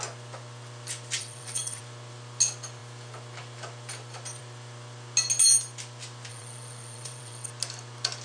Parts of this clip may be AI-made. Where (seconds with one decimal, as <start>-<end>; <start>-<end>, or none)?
1.2-1.8; 6.3-7.5